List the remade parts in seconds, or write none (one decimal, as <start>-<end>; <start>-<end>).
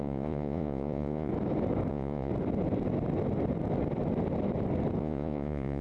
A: 0.0-1.3; 1.9-2.3; 5.0-5.8